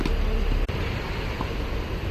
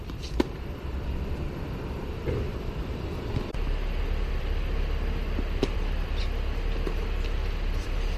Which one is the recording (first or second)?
first